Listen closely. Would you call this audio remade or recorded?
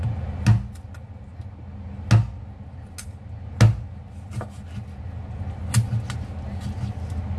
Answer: recorded